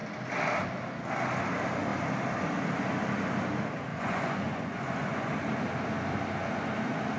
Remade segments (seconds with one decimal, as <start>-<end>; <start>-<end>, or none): 3.9-5.3